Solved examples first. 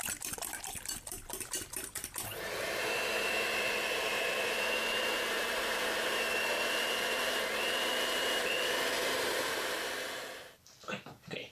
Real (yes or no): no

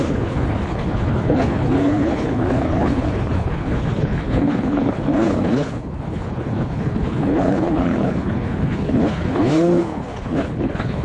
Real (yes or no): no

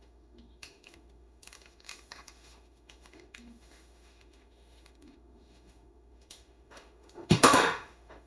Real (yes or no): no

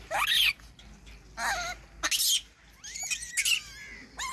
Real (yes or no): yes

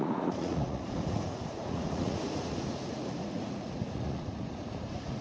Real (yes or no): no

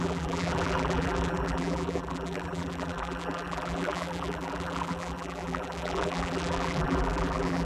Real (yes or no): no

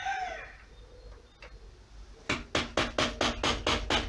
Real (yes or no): yes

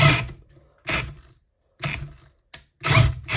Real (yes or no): yes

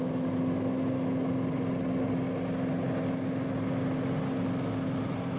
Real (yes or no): yes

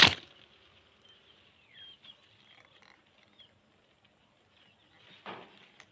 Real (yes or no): yes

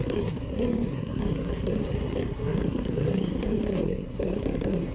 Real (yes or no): no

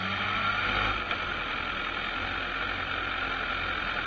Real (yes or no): yes